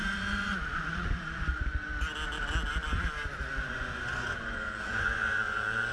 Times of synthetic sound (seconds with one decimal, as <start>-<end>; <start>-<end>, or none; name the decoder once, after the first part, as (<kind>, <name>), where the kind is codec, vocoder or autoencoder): 0.0-1.9 (vocoder, Vocos); 3.6-5.9